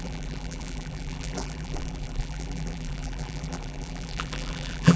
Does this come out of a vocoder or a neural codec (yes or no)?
yes